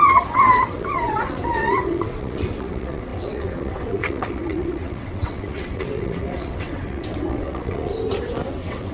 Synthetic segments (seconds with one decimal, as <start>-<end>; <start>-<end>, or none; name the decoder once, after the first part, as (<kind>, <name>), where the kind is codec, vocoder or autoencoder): 0.0-7.9 (vocoder, WaveNeXt); 8.5-8.9